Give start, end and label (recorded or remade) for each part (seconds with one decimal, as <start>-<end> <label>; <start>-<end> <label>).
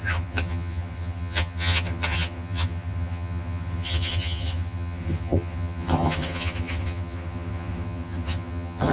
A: 0.0-8.9 remade